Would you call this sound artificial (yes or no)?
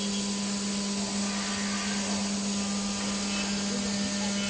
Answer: no